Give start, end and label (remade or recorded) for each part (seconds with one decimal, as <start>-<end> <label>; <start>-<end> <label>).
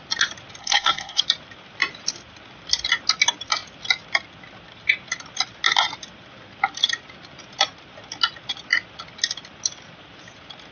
0.0-0.6 recorded; 0.6-1.2 remade; 1.2-10.7 recorded